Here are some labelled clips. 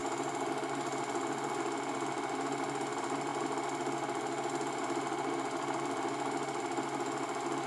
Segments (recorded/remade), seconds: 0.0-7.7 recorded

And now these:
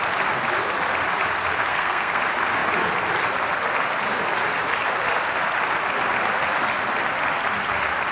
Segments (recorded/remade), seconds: 0.0-1.7 recorded; 1.7-2.2 remade; 2.2-8.1 recorded

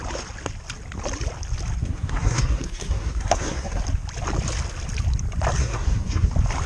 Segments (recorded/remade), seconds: 0.0-1.8 recorded; 1.8-3.8 remade; 3.8-5.6 recorded; 5.6-6.3 remade; 6.3-6.7 recorded

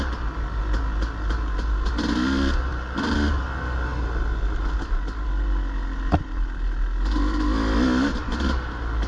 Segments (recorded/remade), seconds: 0.0-9.1 recorded

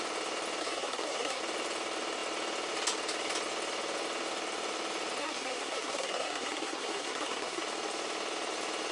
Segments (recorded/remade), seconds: 0.0-0.6 recorded; 0.6-1.4 remade; 1.4-5.2 recorded; 5.2-7.6 remade; 7.6-8.9 recorded

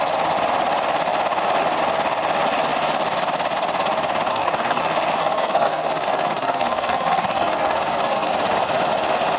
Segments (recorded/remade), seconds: 0.0-4.3 recorded; 4.3-4.8 remade; 4.8-5.2 recorded; 5.2-8.3 remade; 8.3-9.4 recorded